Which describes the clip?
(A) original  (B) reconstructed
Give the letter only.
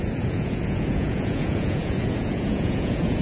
B